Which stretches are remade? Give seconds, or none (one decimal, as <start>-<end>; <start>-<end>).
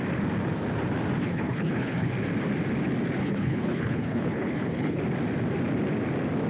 1.2-2.1; 3.2-5.0